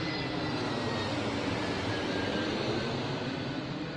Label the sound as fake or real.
real